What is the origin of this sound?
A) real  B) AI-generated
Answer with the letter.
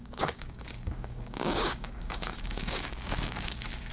B